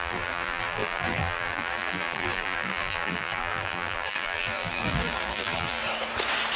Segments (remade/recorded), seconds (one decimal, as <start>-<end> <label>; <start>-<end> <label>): 0.0-5.8 remade; 5.8-6.6 recorded